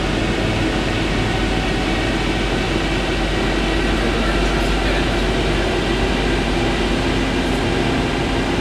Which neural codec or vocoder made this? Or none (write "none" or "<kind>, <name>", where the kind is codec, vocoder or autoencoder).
none